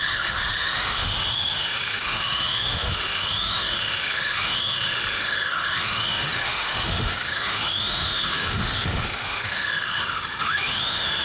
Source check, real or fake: fake